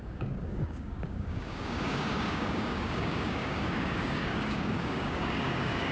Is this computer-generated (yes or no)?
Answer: yes